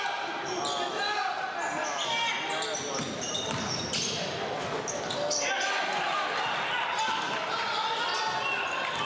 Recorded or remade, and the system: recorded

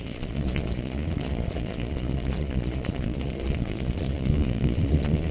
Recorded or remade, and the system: remade, vocoder, Vocos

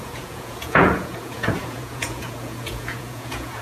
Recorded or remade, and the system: remade, vocoder, Vocos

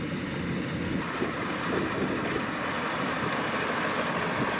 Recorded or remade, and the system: recorded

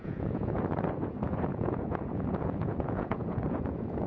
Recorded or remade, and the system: remade, vocoder, Vocos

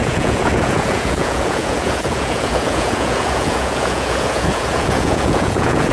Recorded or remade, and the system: remade, vocoder, Vocos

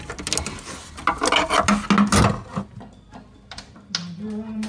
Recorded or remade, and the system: recorded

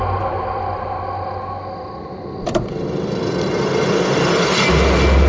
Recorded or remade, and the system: recorded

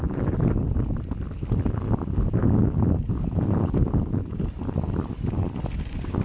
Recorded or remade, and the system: recorded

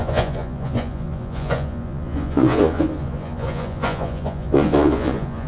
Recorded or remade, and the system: remade, vocoder, Vocos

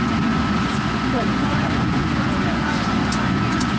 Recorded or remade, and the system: remade, vocoder, Vocos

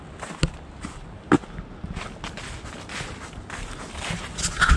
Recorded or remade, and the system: recorded